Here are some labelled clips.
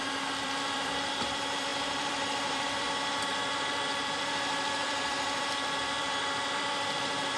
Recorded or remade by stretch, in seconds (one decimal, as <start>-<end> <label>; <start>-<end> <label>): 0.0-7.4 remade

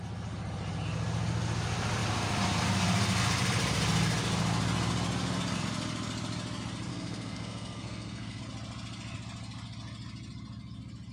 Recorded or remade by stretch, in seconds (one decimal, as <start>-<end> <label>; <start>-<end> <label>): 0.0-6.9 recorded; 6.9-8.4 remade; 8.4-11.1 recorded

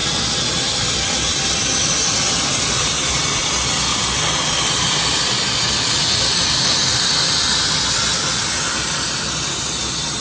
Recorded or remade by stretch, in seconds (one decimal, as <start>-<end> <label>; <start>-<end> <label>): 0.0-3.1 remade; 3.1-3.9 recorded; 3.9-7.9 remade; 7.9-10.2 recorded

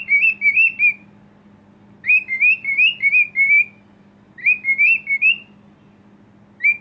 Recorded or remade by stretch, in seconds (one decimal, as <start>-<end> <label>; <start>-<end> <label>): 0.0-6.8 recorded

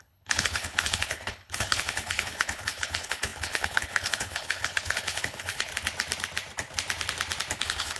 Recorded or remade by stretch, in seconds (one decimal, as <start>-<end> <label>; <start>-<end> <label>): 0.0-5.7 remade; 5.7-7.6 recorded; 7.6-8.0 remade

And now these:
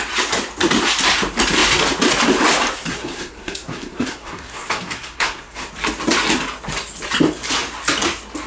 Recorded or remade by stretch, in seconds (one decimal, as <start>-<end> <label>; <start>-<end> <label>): 0.0-2.9 recorded; 2.9-5.7 remade; 5.7-8.5 recorded

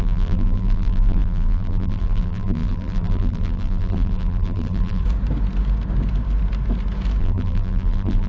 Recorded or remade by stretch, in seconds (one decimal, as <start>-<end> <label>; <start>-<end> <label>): 0.0-5.0 remade; 5.0-7.2 recorded; 7.2-8.3 remade